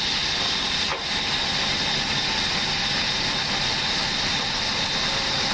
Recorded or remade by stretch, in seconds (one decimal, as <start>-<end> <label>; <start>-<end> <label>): 0.0-5.5 recorded